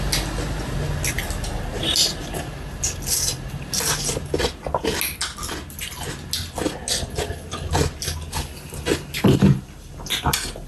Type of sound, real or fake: real